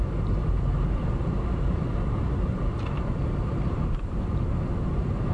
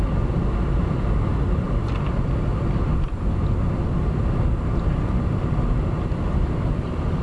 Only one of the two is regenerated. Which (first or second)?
first